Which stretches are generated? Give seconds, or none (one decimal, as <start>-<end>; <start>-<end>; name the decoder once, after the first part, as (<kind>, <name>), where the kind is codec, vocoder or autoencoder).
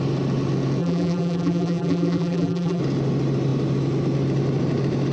0.8-2.8 (vocoder, BigVGAN v2)